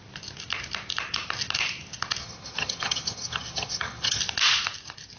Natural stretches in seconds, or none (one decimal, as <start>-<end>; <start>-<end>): 0.0-2.2; 4.2-5.2

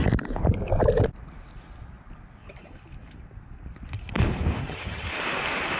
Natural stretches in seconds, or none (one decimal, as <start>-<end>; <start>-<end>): 0.0-4.6; 5.1-5.8

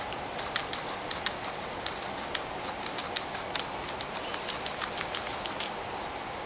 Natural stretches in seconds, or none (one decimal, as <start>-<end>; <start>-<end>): 0.0-6.5

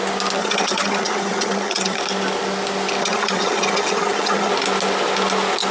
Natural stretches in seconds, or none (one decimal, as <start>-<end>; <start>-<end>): 0.0-0.4; 2.0-3.0; 4.5-5.7